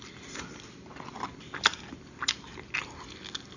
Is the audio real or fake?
real